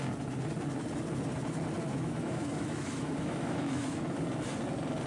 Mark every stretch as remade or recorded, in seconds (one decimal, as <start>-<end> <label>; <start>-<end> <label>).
0.0-1.9 recorded; 1.9-4.0 remade; 4.0-5.1 recorded